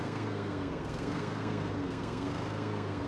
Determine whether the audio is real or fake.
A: fake